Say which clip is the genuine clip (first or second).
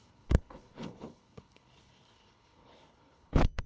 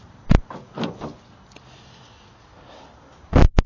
second